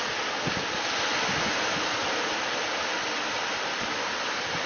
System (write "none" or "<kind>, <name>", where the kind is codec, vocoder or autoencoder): none